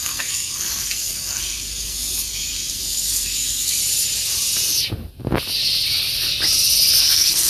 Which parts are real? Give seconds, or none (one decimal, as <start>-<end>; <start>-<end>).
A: 3.8-7.0